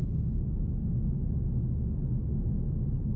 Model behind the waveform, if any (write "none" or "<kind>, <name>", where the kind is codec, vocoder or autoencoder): none